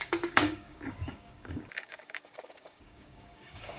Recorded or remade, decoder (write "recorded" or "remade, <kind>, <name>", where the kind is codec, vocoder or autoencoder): remade, codec, DAC